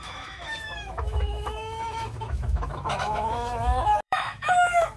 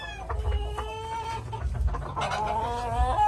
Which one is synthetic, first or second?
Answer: first